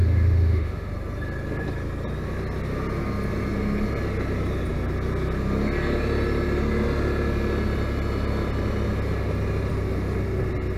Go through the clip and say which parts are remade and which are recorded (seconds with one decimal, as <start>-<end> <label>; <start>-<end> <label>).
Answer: 0.0-0.9 remade; 0.9-10.8 recorded